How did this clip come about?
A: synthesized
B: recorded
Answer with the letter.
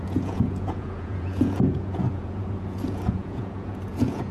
A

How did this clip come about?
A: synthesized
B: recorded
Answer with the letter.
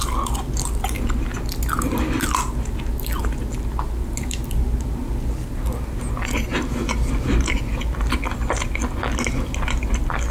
B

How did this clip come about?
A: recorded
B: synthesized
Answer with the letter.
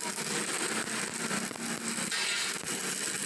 A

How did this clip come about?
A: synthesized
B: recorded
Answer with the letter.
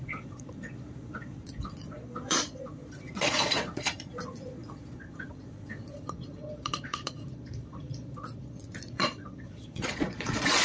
A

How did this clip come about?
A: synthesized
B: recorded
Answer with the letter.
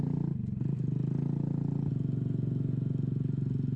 B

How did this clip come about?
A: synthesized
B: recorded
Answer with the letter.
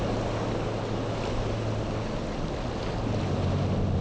B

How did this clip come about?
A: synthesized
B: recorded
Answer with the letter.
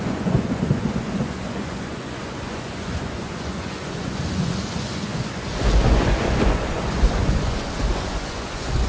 A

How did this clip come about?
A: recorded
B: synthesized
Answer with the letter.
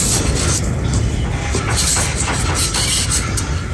A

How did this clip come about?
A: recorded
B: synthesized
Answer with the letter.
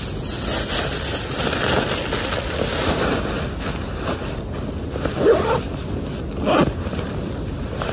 A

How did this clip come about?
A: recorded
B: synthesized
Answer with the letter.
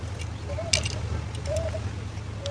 A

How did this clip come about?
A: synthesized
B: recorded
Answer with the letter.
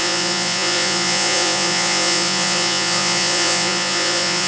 A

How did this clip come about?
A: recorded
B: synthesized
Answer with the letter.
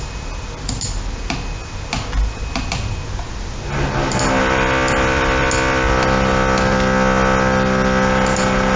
A